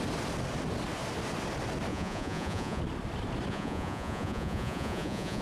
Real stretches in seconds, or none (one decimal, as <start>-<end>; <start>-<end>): 0.0-1.9; 2.8-3.5